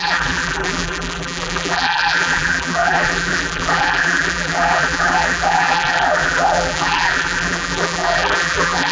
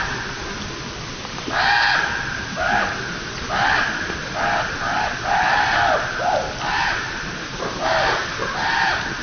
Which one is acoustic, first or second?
second